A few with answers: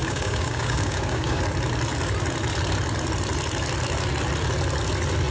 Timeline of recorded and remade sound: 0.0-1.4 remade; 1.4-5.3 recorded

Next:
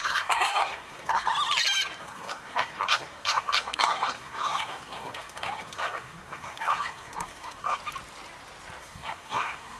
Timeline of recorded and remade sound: 0.0-1.3 remade; 1.3-2.0 recorded; 2.0-7.8 remade; 7.8-8.8 recorded; 8.8-9.8 remade

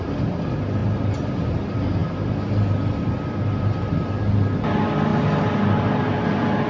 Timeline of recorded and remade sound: 0.0-6.7 recorded

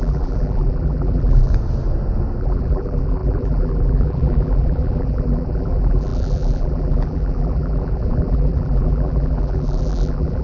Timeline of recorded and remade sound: 0.0-1.5 remade; 1.5-2.4 recorded; 2.4-10.4 remade

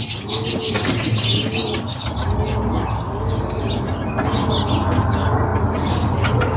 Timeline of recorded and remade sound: 0.0-6.6 recorded

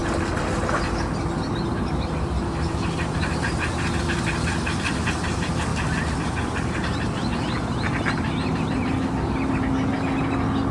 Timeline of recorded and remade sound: 0.0-1.5 recorded; 1.5-5.7 remade; 5.7-10.7 recorded

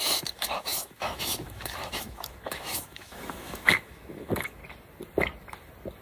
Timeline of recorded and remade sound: 0.0-4.6 remade; 4.6-6.0 recorded

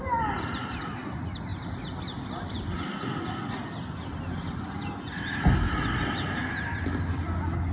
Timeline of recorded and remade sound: 0.0-7.7 recorded